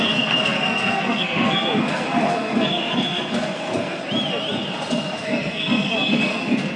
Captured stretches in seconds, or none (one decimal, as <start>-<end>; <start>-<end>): 4.0-4.9